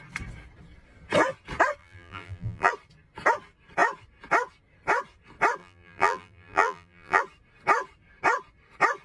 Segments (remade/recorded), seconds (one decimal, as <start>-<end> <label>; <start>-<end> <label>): 0.0-1.8 recorded; 1.8-2.7 remade; 2.7-5.6 recorded; 5.6-7.2 remade; 7.2-9.0 recorded